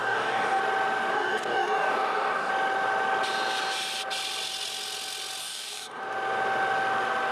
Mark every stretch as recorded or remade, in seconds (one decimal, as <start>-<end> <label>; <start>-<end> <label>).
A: 0.0-0.6 remade; 0.6-1.1 recorded; 1.1-2.5 remade; 2.5-5.4 recorded; 5.4-6.0 remade; 6.0-7.3 recorded